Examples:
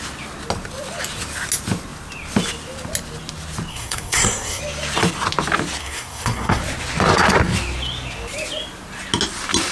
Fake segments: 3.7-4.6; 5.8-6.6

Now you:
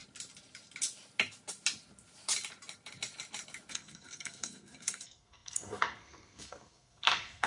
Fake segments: 3.7-7.5

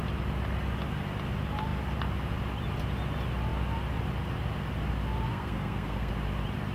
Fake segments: 5.3-6.1

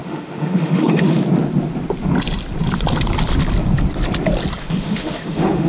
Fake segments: 0.0-1.2; 4.6-5.7

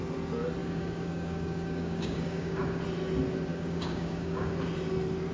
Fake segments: 0.6-2.6; 3.5-4.5

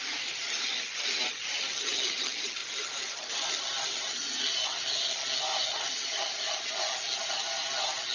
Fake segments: none